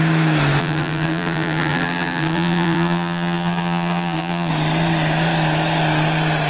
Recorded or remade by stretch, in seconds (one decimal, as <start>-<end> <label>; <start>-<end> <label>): 0.0-0.6 recorded; 0.6-4.5 remade; 4.5-6.5 recorded